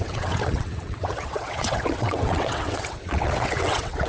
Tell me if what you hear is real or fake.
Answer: fake